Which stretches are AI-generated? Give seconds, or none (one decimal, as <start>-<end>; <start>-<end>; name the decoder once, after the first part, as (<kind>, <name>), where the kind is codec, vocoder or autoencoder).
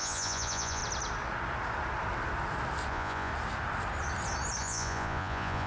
0.0-0.8 (vocoder, Vocos); 2.9-3.3; 4.6-5.7